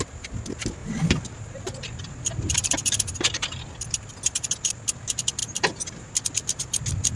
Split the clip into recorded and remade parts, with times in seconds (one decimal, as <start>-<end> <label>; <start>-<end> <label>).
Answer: 0.0-0.8 recorded; 0.8-3.6 remade; 3.6-5.4 recorded; 5.4-6.1 remade; 6.1-7.2 recorded

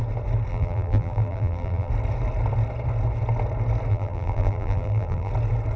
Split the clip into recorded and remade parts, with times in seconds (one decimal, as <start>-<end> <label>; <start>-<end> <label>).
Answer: 0.0-0.5 recorded; 0.5-1.9 remade; 1.9-3.9 recorded; 3.9-5.3 remade; 5.3-5.8 recorded

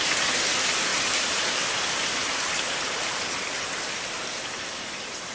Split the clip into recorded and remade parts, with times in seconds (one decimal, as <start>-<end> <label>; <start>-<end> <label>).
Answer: 0.0-0.9 recorded; 0.9-3.0 remade; 3.0-5.3 recorded

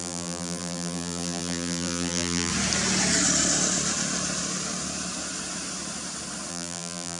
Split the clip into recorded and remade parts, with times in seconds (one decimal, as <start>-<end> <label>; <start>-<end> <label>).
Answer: 0.0-2.5 remade; 2.5-6.5 recorded; 6.5-7.2 remade

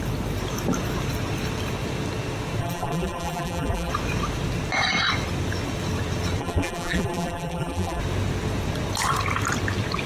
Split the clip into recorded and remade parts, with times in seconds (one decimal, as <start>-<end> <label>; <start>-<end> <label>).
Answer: 0.0-2.6 recorded; 2.6-3.9 remade; 3.9-6.4 recorded; 6.4-8.0 remade; 8.0-10.1 recorded

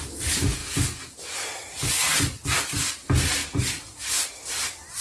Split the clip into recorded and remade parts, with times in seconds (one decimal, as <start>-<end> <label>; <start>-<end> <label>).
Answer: 0.0-0.6 remade; 0.6-1.9 recorded; 1.9-3.4 remade; 3.4-4.6 recorded; 4.6-5.0 remade

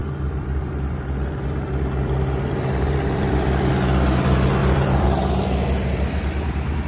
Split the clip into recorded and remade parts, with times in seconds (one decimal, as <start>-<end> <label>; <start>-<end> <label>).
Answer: 0.0-3.7 remade; 3.7-4.6 recorded; 4.6-5.3 remade; 5.3-6.9 recorded